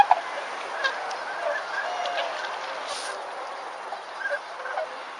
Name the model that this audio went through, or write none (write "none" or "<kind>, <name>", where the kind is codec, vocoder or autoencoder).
none